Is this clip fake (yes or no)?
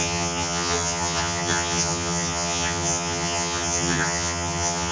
yes